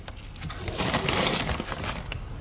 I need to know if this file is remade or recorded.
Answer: recorded